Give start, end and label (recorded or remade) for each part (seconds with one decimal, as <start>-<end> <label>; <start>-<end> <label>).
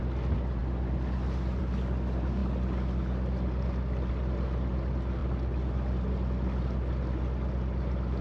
0.0-8.2 recorded